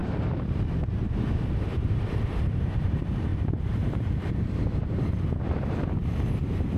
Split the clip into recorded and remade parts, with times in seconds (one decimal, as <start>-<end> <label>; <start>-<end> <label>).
0.0-0.8 recorded; 0.8-6.8 remade